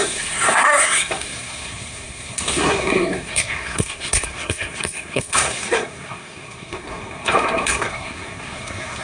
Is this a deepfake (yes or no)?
yes